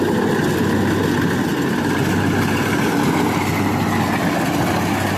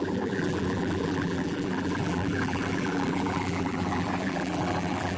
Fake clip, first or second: second